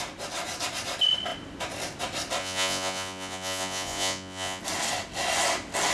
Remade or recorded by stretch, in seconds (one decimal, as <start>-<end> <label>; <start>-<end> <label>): 0.0-2.4 recorded; 2.4-4.6 remade; 4.6-5.9 recorded